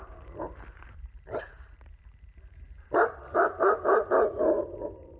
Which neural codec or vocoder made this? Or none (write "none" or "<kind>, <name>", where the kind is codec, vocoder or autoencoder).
vocoder, BigVGAN v2